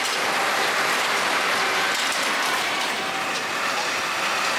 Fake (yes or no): yes